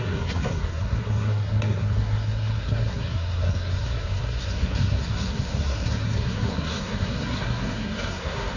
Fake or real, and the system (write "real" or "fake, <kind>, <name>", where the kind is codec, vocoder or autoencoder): fake, codec, SNAC